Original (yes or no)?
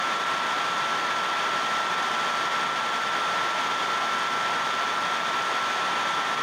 yes